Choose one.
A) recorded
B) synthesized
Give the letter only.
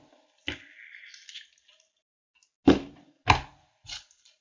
A